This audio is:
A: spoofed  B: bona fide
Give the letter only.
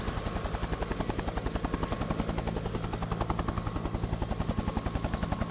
B